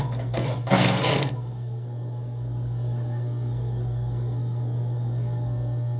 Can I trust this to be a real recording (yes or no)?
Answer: no